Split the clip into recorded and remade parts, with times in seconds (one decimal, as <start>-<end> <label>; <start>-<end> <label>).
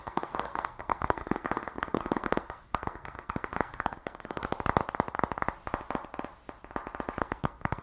0.0-4.4 remade; 4.4-7.2 recorded; 7.2-7.8 remade